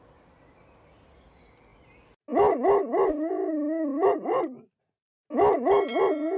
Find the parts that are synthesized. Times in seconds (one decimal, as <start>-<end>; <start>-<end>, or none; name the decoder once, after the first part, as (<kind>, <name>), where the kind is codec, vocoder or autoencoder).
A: none